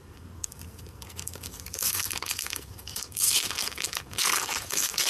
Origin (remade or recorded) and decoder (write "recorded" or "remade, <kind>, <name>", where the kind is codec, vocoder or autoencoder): remade, codec, SNAC